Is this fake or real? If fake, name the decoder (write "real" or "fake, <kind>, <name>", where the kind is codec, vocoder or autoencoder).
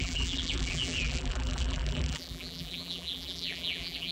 fake, vocoder, BigVGAN v2